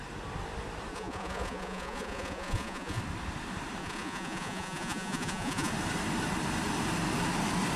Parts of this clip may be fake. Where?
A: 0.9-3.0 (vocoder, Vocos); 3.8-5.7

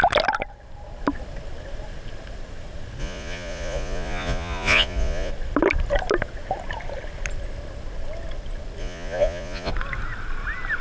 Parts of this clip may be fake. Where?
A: 3.0-5.3 (vocoder, Vocos); 8.8-9.7

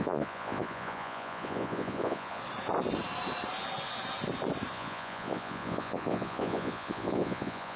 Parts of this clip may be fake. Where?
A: 0.0-2.4 (vocoder, Vocos); 4.7-7.8